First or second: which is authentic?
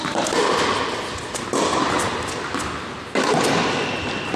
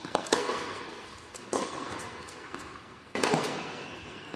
first